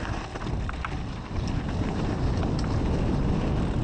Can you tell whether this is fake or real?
real